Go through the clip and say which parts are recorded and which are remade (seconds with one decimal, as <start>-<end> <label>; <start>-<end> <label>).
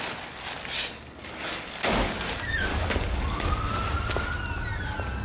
0.0-0.9 recorded; 0.9-1.8 remade; 1.8-2.7 recorded; 2.7-3.7 remade; 3.7-5.2 recorded